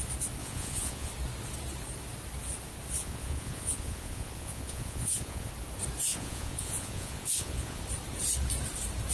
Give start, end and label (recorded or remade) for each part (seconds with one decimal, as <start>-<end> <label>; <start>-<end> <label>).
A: 0.0-0.4 recorded; 0.4-1.1 remade; 1.1-3.0 recorded; 3.0-5.5 remade; 5.5-6.1 recorded; 6.1-7.8 remade; 7.8-9.1 recorded